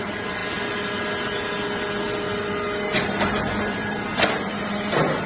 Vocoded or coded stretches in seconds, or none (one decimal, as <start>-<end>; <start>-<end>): none